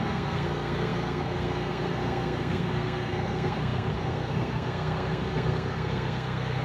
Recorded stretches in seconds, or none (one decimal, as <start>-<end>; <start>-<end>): none